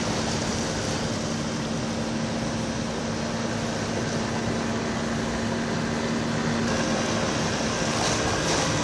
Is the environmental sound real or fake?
real